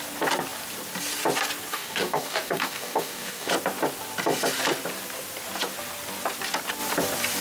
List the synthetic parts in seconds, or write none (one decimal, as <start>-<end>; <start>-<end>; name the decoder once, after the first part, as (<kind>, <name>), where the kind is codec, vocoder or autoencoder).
1.7-3.5 (codec, DAC)